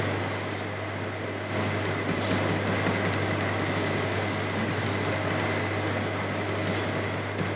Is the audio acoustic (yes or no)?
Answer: yes